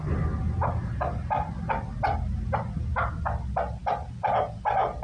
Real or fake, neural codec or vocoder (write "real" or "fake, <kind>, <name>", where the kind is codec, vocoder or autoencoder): real